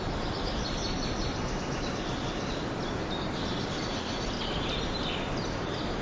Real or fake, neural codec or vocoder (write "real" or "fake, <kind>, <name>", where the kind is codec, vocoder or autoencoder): real